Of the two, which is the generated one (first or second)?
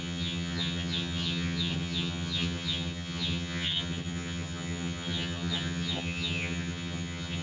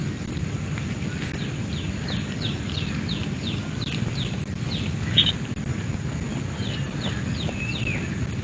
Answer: first